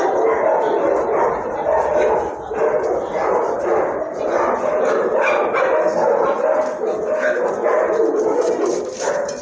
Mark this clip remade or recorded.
recorded